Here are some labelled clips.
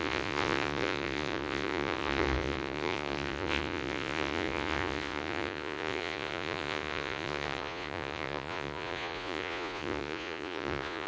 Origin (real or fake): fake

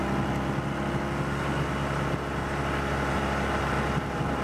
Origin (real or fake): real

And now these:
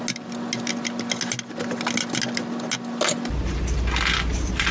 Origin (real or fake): real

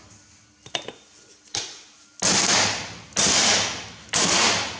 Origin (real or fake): real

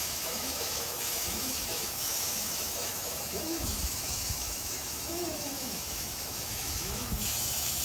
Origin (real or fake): fake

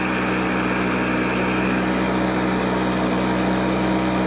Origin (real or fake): real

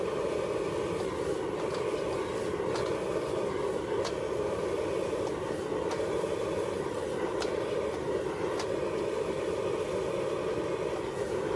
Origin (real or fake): real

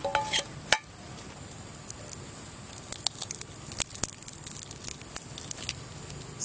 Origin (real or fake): real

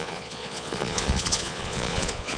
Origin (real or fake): fake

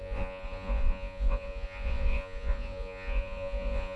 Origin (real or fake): fake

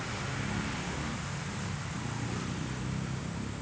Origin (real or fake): real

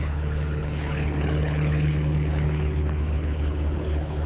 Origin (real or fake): fake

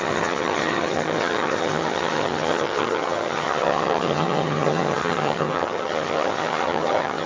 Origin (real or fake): fake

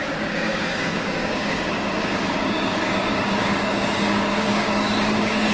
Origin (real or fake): fake